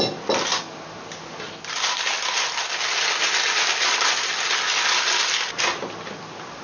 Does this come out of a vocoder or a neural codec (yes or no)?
no